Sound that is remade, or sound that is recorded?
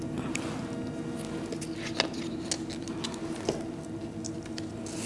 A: recorded